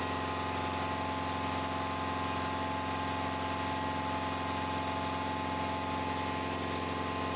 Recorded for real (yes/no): yes